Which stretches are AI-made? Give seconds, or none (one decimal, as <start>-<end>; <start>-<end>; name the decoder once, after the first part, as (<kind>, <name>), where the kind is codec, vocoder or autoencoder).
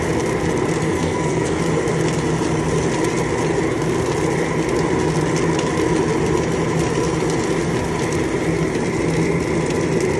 0.8-1.6 (codec, SNAC)